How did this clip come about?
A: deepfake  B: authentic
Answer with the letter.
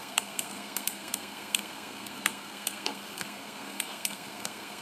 A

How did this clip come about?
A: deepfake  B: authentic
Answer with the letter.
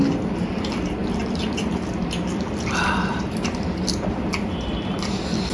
B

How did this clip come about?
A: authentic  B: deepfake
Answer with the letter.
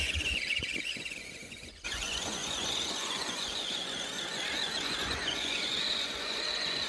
B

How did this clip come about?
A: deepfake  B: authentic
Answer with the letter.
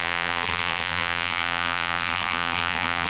A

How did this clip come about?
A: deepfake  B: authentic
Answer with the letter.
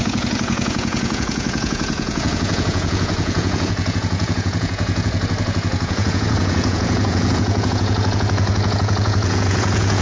A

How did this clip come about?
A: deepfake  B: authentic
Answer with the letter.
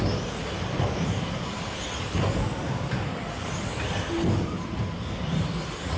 B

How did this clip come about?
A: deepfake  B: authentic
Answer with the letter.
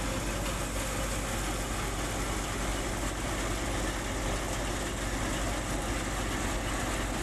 B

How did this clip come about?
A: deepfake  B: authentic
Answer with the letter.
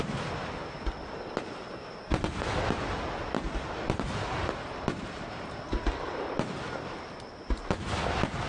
B